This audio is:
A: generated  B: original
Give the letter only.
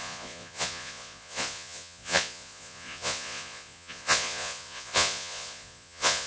A